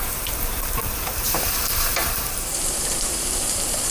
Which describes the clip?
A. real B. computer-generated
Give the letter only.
B